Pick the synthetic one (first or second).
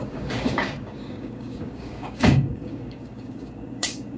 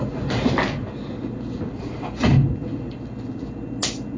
first